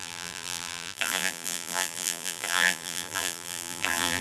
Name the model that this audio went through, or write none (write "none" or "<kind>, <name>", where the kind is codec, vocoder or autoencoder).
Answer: vocoder, BigVGAN v2